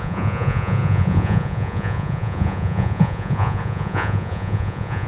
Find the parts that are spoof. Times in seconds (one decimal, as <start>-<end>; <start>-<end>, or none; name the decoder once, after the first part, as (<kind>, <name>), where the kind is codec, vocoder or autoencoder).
0.0-5.1 (vocoder, Vocos)